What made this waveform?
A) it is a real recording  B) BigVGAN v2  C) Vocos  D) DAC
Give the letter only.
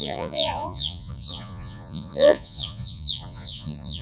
C